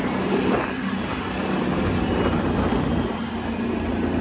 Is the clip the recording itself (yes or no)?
yes